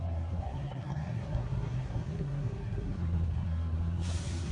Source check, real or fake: fake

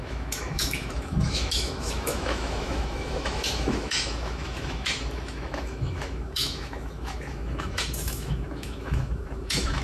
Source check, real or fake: fake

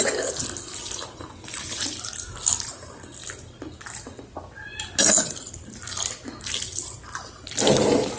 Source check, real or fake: real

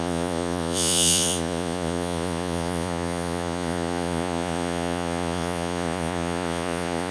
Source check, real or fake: fake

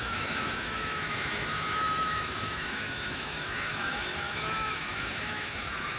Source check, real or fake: fake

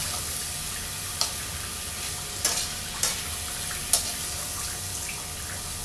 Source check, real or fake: real